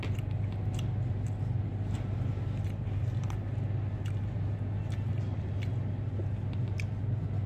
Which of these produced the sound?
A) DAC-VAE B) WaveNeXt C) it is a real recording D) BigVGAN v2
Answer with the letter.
C